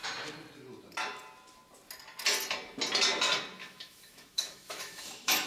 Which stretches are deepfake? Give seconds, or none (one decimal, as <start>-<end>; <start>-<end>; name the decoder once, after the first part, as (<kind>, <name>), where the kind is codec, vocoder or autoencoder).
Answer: 3.6-5.5 (autoencoder, DAC-VAE)